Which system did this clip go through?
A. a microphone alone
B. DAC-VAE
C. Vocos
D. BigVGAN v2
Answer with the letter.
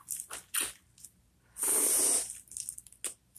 A